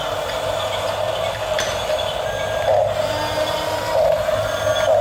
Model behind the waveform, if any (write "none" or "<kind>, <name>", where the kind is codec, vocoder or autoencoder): none